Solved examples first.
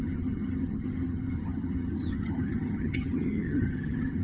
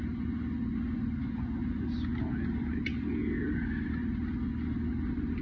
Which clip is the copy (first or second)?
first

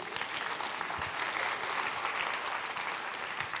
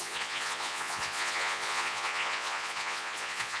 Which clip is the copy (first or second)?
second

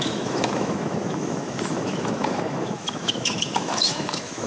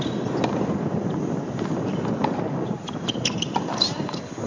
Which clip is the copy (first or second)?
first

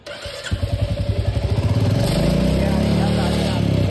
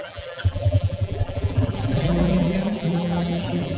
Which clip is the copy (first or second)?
second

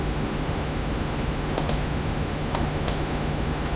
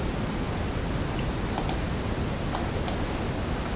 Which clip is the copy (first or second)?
first